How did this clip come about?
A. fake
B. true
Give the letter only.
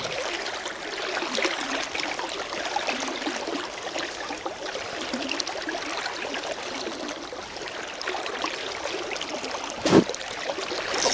A